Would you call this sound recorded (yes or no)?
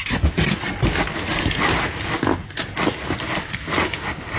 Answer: yes